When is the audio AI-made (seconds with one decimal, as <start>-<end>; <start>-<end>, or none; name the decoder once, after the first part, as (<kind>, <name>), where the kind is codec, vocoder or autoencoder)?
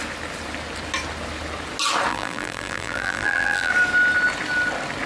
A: 2.1-3.7 (vocoder, BigVGAN v2)